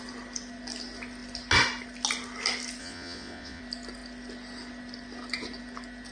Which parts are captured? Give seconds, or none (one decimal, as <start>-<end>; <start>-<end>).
0.0-2.8; 3.6-6.1